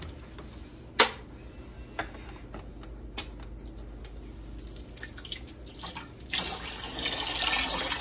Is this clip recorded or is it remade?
recorded